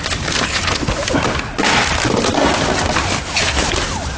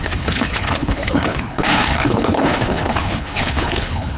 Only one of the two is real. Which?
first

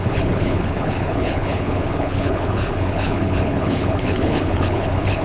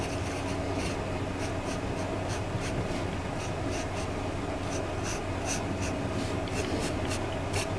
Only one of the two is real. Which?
second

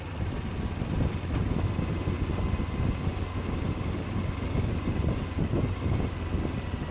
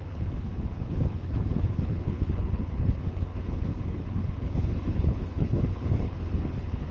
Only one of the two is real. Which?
first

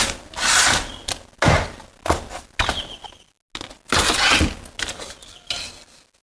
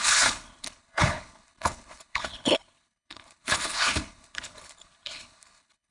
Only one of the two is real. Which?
first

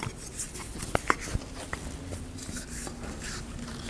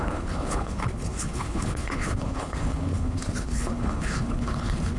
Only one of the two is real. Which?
first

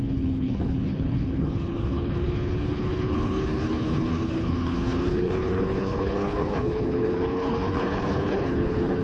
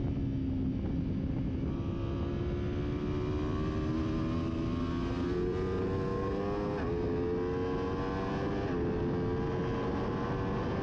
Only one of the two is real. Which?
second